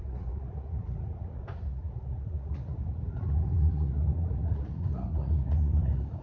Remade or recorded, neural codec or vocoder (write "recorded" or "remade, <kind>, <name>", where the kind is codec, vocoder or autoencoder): remade, vocoder, Vocos